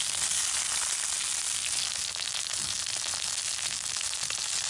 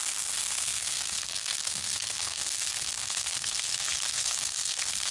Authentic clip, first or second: first